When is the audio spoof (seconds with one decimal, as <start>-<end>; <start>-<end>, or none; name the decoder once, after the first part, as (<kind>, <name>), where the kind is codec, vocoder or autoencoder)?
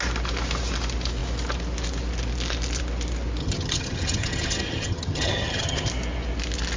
3.4-5.9 (vocoder, HiFi-GAN)